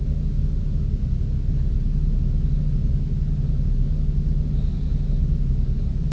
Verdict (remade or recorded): recorded